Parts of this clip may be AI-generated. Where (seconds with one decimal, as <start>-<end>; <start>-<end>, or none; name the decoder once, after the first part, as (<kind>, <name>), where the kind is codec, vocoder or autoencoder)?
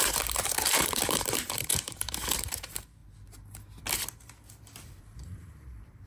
0.0-3.0 (vocoder, BigVGAN v2); 5.0-6.1